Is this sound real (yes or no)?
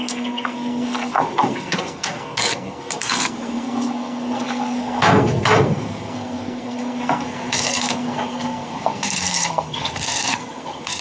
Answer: no